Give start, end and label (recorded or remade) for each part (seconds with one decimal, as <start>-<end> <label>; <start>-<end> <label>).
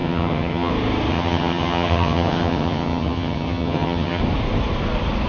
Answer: 0.0-0.7 remade; 0.7-1.1 recorded; 1.1-4.2 remade; 4.2-5.3 recorded